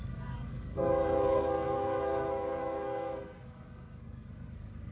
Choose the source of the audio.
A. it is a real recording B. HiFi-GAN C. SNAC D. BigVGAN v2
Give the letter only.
C